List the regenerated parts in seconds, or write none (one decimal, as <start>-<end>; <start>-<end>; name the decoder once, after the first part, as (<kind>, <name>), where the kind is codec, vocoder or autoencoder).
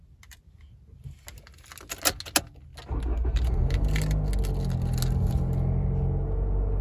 none